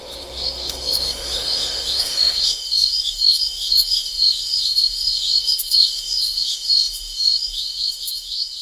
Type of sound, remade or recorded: remade